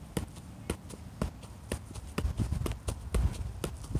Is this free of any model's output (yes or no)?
yes